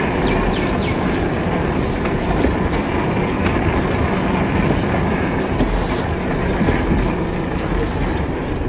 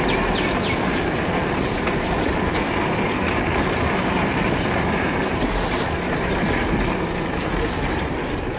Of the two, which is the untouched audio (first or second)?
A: first